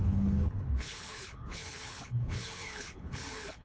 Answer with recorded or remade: remade